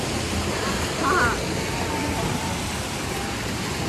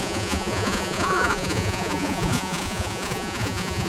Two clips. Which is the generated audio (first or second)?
second